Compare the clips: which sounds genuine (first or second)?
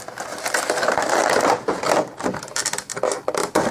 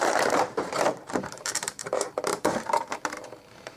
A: first